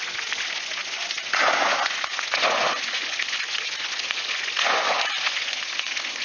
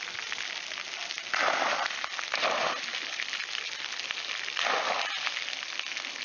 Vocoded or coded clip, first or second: first